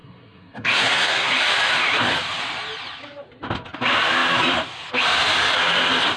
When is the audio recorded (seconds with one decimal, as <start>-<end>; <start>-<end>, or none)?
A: 1.3-6.2